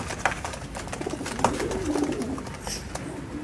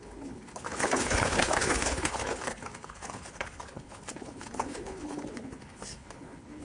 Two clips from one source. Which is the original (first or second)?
first